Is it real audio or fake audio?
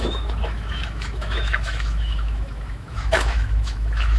fake